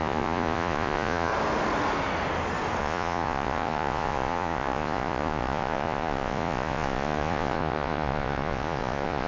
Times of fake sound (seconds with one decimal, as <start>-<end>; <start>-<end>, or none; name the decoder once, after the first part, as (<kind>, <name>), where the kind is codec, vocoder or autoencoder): 0.0-1.3 (vocoder, Vocos); 2.8-9.3